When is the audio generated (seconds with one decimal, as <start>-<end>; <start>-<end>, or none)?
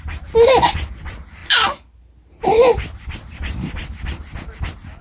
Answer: none